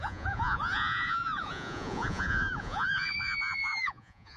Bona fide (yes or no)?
no